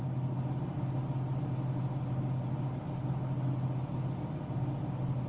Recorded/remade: recorded